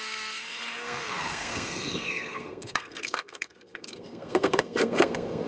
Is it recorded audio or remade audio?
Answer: remade